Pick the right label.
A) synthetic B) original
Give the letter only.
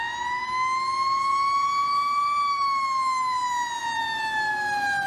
B